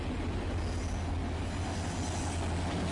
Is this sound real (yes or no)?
yes